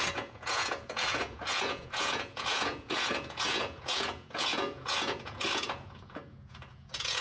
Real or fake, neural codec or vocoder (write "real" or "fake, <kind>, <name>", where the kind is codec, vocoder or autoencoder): fake, vocoder, Vocos